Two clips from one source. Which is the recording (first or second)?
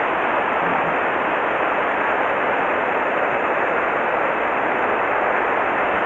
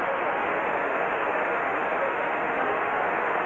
first